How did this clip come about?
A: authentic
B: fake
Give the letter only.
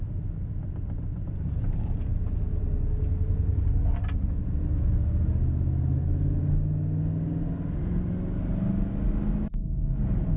A